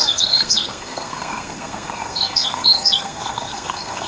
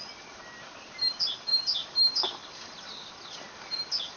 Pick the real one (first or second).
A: second